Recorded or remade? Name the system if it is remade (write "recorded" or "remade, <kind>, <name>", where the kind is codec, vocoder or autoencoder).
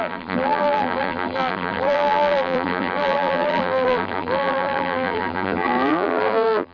remade, vocoder, BigVGAN v2